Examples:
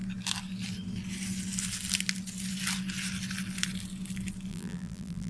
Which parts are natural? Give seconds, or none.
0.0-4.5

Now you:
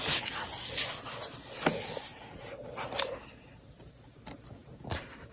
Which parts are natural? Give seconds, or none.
0.0-2.1; 4.0-4.6

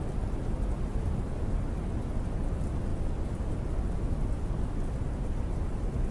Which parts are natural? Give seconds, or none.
0.0-0.4; 1.8-2.9